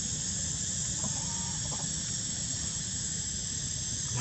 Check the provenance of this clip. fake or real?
real